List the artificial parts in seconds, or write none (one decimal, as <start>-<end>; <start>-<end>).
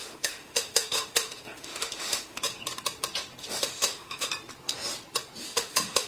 0.0-2.4; 3.4-4.3; 5.4-6.1